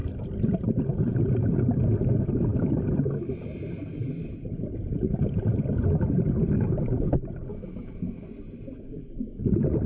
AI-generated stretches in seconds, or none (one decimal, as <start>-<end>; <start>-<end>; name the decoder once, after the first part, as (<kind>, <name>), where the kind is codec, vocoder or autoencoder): 7.5-8.0 (autoencoder, DAC-VAE)